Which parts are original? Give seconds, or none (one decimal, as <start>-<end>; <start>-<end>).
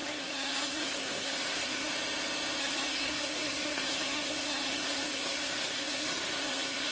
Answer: 1.9-2.6